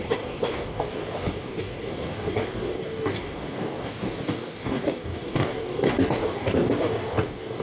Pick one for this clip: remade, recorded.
remade